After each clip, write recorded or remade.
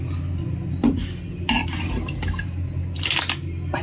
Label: recorded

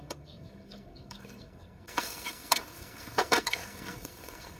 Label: remade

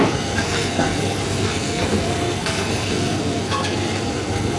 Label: remade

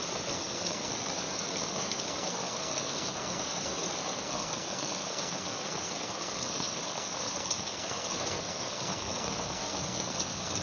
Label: remade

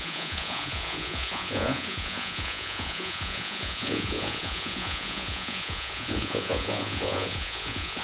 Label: remade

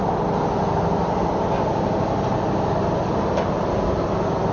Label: recorded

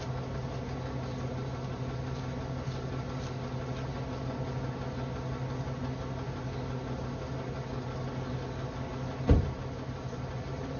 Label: recorded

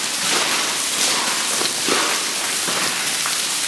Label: remade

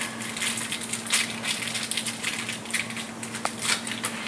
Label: recorded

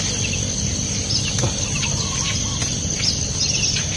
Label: recorded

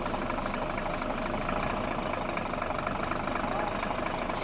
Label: recorded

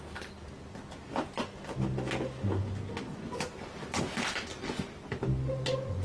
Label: recorded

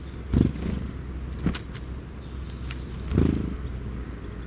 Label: recorded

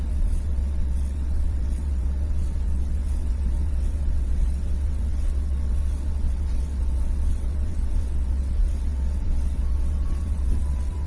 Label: remade